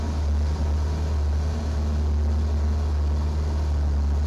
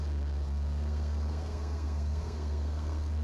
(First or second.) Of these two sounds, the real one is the first